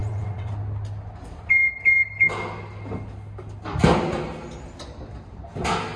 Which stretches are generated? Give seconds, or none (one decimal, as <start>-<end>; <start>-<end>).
0.0-0.5